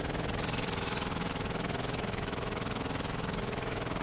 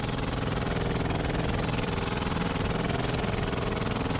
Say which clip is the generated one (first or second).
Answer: first